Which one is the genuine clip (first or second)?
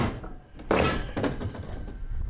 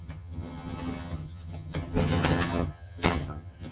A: first